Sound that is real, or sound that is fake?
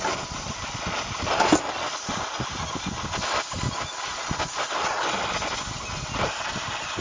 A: real